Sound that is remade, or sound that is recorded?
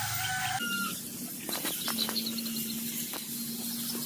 recorded